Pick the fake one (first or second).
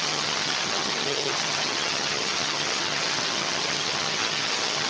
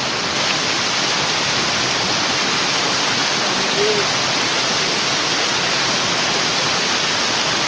first